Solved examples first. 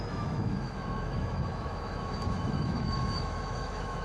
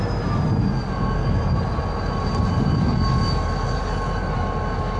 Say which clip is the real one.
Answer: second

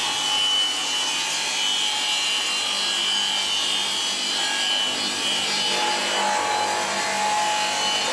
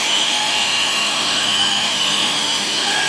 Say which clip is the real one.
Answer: first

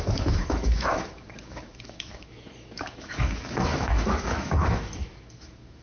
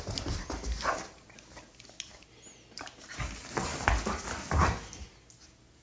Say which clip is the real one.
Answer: second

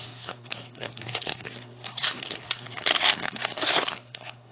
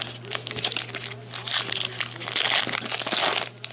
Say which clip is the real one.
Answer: second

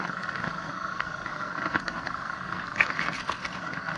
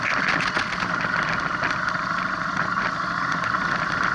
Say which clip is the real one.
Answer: second